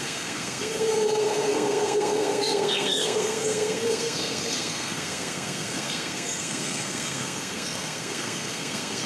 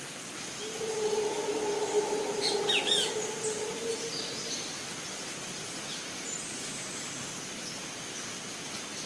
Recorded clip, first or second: second